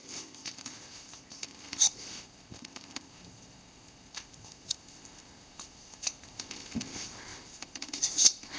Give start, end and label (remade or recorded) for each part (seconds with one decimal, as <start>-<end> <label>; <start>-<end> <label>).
0.0-8.6 remade